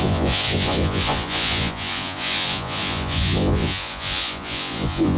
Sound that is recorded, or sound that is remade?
remade